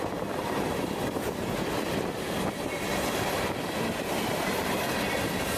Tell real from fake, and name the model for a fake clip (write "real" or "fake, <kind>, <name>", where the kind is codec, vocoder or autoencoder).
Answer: real